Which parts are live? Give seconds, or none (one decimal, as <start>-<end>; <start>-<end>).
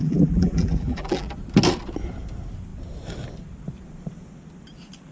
1.3-5.1